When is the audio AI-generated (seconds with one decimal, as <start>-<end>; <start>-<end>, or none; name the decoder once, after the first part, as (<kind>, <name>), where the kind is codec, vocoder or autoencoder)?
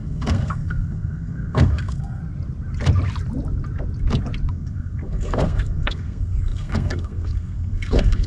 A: 0.0-2.2 (codec, SNAC); 4.5-8.3